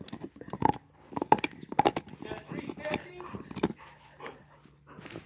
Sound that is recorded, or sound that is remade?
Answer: recorded